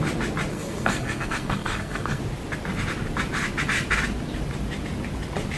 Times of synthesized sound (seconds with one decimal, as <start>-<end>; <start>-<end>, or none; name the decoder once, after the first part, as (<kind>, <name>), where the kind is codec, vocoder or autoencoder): 0.5-2.2 (codec, SNAC)